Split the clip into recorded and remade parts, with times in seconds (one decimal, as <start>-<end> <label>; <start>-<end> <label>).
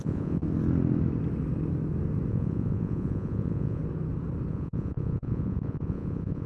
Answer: 0.0-0.4 remade; 0.4-2.3 recorded; 2.3-3.8 remade; 3.8-4.5 recorded; 4.5-6.5 remade